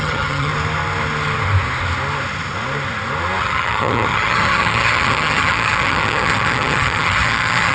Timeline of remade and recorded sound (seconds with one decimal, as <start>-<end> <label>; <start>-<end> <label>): 0.0-0.5 remade; 0.5-3.4 recorded; 3.4-7.7 remade